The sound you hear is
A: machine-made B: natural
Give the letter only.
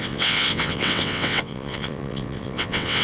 A